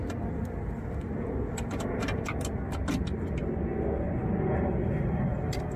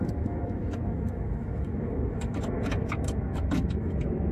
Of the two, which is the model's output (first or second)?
second